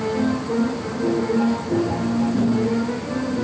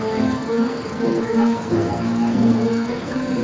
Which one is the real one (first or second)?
first